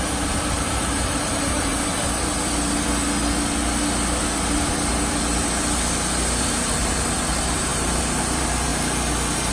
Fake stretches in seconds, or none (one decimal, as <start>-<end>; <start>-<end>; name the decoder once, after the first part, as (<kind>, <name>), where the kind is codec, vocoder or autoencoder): 0.0-1.7 (vocoder, BigVGAN v2); 6.4-8.7